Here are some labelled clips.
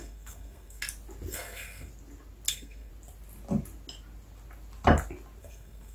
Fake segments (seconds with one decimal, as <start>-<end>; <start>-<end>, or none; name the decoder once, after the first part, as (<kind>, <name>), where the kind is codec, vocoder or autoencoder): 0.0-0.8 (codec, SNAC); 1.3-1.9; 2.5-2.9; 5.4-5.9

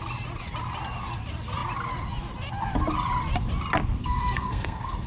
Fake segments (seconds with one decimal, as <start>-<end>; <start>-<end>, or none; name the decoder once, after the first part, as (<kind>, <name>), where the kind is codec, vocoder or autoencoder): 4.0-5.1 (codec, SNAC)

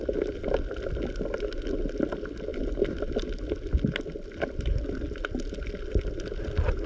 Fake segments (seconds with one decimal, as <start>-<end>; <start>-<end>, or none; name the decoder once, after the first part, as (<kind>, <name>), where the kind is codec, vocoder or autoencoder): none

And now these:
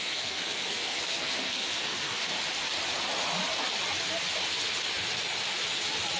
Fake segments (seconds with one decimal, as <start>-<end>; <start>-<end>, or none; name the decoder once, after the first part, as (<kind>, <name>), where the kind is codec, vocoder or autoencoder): 0.0-2.3 (codec, SNAC)

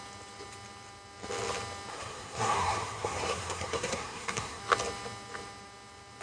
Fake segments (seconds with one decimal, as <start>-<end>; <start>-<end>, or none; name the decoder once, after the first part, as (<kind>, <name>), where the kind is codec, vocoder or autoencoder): 1.9-4.6 (codec, SNAC)

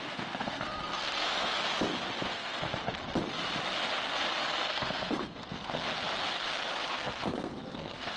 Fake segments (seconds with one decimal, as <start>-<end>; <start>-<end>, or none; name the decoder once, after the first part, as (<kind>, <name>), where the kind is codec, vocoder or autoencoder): 0.0-1.6 (codec, SNAC); 2.3-2.7; 4.7-5.9; 6.9-8.2

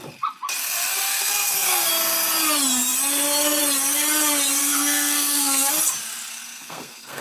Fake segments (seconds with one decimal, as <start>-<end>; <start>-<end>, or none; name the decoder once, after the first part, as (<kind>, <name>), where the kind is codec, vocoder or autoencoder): 0.6-1.9 (codec, SNAC); 4.6-5.7; 6.3-7.2

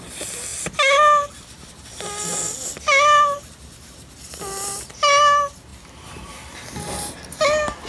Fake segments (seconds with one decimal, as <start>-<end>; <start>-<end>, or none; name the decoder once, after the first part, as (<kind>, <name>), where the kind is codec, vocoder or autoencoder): none